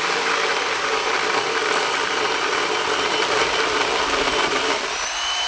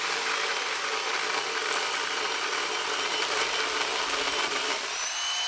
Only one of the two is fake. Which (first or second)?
first